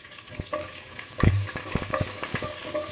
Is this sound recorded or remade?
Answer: remade